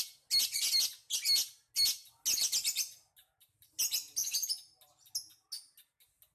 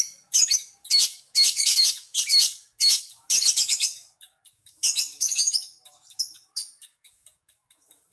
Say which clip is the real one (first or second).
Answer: first